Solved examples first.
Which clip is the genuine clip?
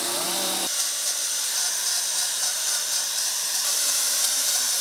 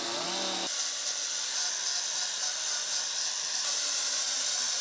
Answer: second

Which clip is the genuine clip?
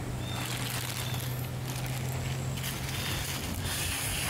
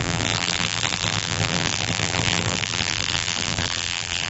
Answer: first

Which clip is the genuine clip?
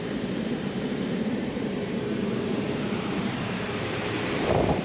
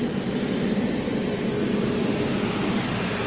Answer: second